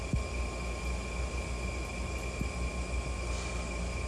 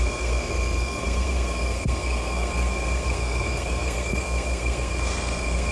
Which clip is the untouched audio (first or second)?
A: first